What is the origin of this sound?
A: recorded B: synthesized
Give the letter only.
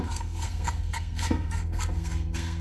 B